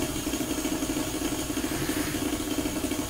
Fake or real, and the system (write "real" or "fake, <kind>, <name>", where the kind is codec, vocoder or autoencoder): real